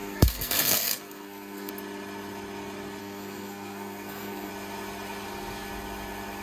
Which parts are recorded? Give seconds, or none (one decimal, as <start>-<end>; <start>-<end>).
1.7-3.0; 4.5-6.4

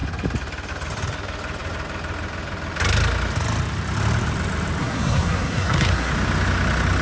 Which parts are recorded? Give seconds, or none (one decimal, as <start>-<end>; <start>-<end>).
0.0-4.8; 6.1-7.0

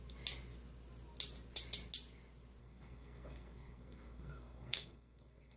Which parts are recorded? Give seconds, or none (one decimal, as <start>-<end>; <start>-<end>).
0.0-2.6

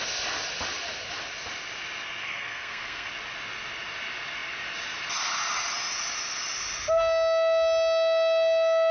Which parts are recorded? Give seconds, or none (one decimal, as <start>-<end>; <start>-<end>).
0.0-2.2; 3.1-8.9

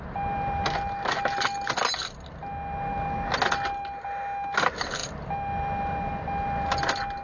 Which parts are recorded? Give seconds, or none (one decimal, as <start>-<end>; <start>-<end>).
0.0-7.2